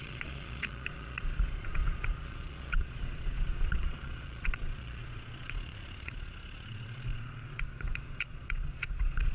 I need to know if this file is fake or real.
fake